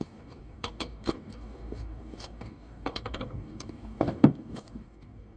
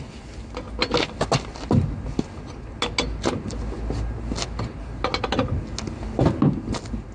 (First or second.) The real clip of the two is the second